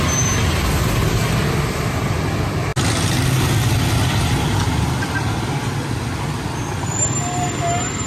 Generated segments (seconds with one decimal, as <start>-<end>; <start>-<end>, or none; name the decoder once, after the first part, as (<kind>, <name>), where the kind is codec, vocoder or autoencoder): none